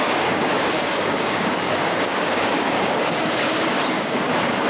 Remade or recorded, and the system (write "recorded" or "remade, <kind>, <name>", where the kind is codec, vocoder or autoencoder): remade, codec, DAC